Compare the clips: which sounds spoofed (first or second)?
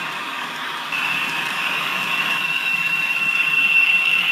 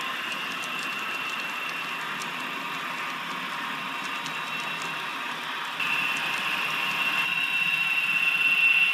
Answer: first